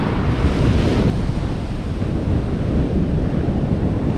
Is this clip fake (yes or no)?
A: yes